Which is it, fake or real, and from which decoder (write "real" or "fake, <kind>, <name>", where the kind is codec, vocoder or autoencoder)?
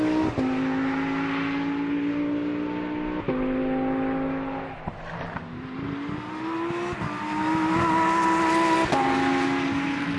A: real